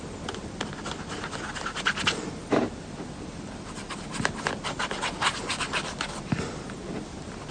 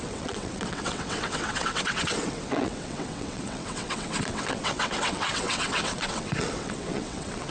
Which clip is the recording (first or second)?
first